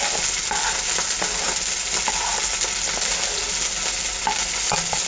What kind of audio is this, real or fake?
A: real